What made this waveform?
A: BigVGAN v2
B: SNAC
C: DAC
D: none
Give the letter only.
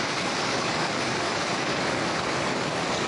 C